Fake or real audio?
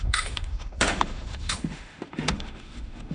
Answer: fake